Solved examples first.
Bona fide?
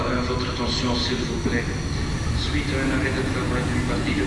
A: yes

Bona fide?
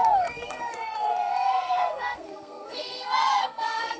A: no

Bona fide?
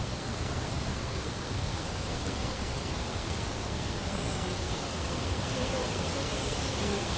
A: no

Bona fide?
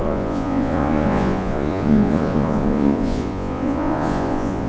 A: no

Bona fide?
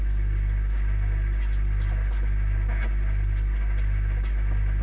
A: yes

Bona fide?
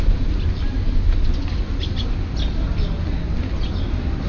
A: yes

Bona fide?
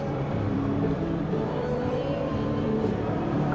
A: no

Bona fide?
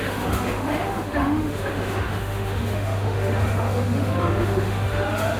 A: no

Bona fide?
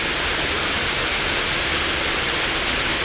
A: yes